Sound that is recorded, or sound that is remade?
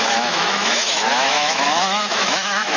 remade